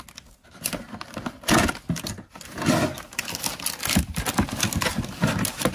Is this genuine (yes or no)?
yes